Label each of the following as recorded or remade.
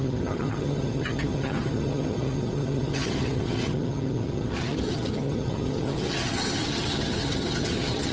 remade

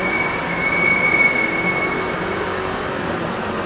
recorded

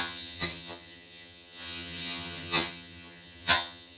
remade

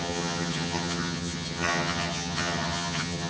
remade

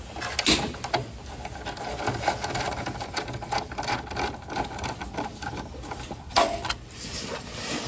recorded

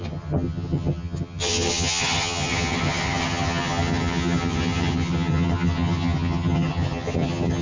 remade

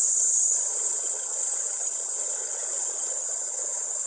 remade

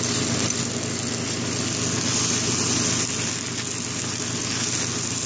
recorded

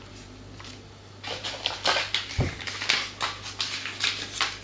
recorded